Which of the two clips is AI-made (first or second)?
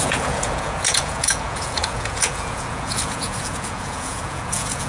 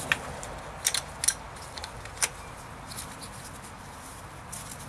first